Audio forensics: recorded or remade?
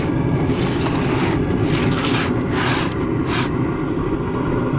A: recorded